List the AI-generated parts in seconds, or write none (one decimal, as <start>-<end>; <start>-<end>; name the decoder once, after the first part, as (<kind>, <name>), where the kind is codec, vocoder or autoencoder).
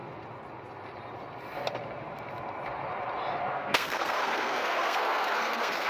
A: 3.5-5.9 (codec, SNAC)